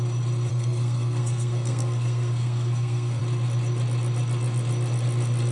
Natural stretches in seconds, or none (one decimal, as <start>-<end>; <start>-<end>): 0.0-0.5; 3.2-5.5